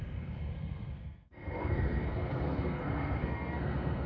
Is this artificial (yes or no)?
yes